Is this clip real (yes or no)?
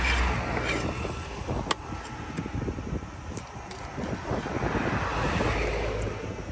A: yes